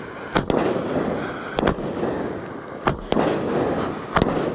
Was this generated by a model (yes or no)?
no